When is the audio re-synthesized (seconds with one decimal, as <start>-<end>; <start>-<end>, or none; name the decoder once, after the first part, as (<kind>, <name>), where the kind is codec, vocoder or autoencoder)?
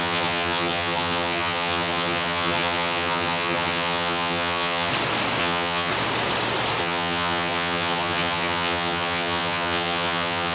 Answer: 0.0-4.9 (vocoder, HiFi-GAN); 5.4-5.9; 6.8-10.5